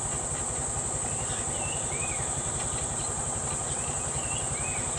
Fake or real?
real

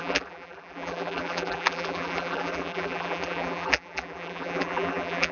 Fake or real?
fake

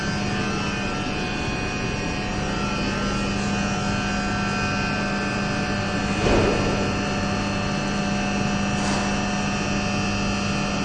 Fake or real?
real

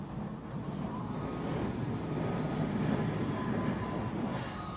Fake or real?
real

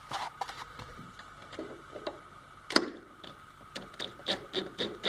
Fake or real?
fake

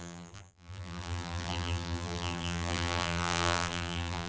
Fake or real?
fake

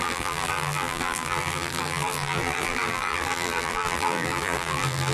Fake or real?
fake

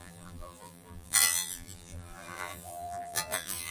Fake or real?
fake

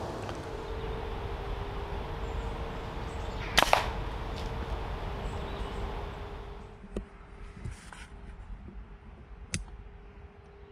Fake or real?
real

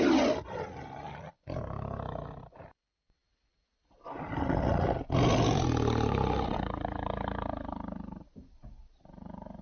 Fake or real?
real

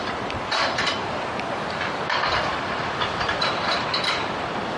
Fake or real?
fake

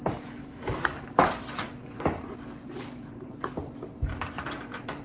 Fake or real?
fake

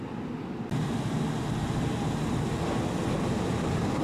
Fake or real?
real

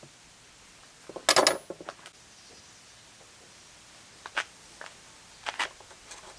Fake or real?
real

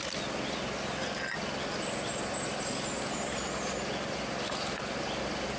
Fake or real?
real